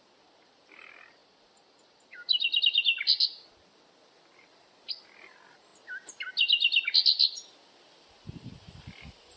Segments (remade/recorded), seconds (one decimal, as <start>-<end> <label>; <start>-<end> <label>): 0.0-1.2 recorded; 1.2-2.6 remade; 2.6-9.4 recorded